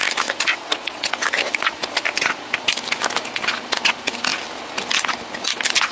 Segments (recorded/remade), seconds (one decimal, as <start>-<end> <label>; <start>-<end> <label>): 0.0-0.5 recorded; 0.5-1.1 remade; 1.1-5.9 recorded